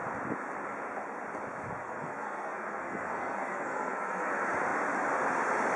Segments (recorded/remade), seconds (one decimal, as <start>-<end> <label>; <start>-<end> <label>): 0.0-1.8 recorded; 1.8-4.3 remade; 4.3-5.8 recorded